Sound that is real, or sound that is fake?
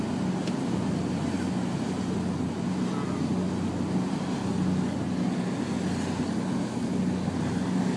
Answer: real